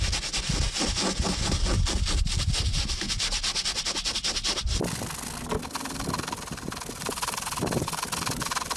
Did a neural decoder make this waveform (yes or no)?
no